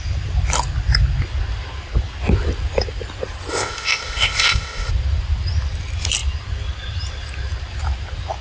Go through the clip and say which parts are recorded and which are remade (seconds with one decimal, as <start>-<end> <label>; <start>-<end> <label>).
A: 0.0-3.5 recorded; 3.5-4.9 remade; 4.9-8.4 recorded

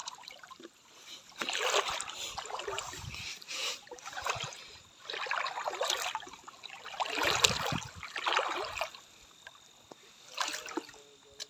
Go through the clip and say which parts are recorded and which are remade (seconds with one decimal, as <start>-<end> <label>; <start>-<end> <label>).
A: 0.0-0.9 remade; 0.9-11.5 recorded